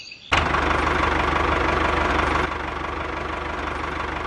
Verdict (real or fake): real